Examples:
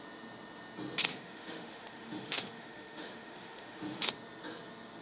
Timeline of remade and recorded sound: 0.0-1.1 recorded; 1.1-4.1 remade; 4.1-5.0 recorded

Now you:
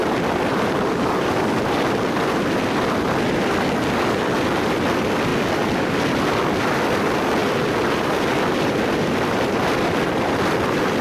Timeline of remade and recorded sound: 0.0-11.0 recorded

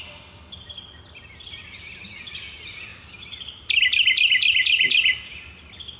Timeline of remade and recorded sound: 0.0-2.9 recorded; 2.9-3.8 remade; 3.8-6.0 recorded

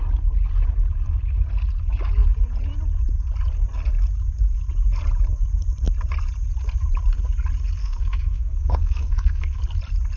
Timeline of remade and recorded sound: 0.0-7.8 recorded; 7.8-9.6 remade; 9.6-10.2 recorded

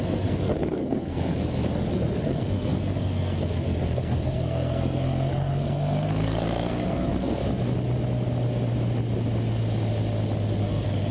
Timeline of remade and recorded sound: 0.0-7.4 remade; 7.4-10.6 recorded; 10.6-11.1 remade